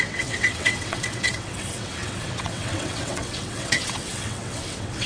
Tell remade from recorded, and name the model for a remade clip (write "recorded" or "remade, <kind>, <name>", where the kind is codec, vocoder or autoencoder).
remade, vocoder, WaveNeXt